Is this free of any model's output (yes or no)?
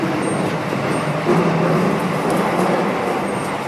yes